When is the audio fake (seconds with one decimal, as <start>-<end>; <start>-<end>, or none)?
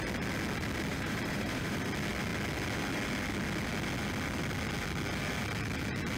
0.9-1.9